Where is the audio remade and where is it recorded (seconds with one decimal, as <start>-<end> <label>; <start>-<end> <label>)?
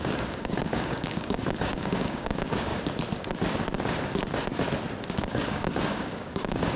0.0-2.7 remade; 2.7-5.1 recorded; 5.1-6.8 remade